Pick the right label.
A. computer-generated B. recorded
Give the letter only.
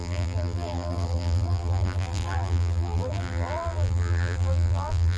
A